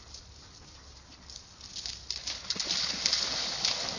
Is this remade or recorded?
recorded